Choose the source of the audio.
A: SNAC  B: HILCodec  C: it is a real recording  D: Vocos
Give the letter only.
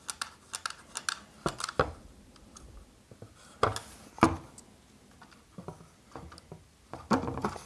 C